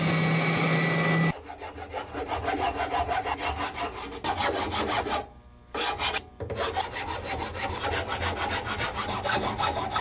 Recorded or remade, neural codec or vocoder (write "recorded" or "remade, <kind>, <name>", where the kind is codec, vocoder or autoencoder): recorded